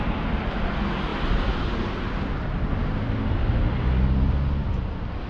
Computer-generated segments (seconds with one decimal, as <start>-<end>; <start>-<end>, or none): 1.1-4.3